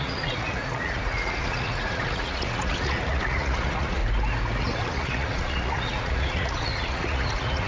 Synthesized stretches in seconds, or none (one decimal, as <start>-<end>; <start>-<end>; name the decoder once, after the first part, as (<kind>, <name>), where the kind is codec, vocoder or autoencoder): 0.0-4.0 (vocoder, Vocos); 4.6-7.7